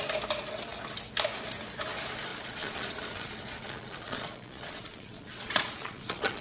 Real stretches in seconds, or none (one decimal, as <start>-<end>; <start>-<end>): 0.0-2.3